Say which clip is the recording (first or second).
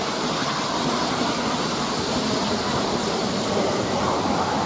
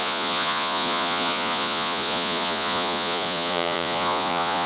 first